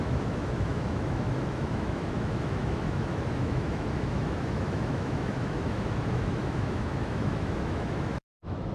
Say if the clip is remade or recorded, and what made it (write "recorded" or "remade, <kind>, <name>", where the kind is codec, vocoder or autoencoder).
remade, autoencoder, DAC-VAE